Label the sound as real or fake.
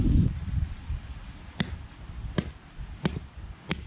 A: real